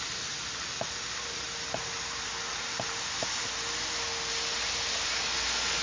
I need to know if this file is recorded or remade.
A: recorded